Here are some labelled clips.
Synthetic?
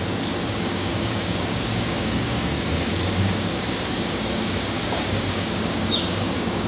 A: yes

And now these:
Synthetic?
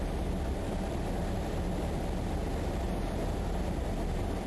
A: yes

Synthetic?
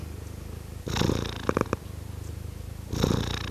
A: no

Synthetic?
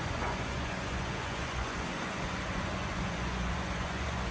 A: yes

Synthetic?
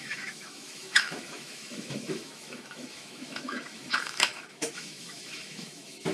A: yes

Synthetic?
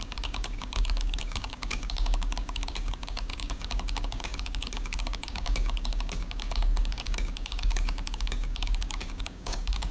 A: yes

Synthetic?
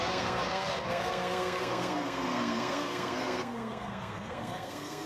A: yes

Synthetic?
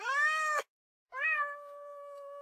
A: yes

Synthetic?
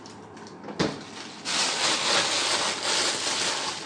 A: no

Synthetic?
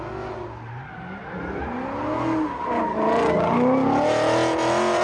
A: no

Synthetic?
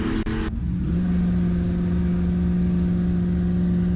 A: no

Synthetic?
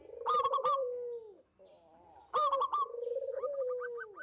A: no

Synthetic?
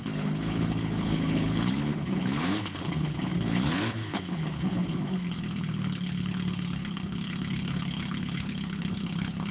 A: yes